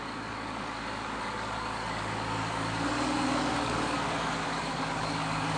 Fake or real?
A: fake